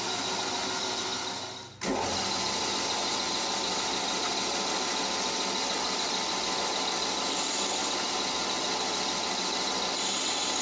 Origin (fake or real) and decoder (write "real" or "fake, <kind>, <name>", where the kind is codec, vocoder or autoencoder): real